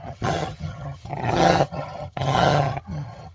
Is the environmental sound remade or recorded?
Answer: remade